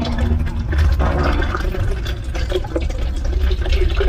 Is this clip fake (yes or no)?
no